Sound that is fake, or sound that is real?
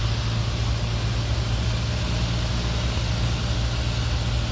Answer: real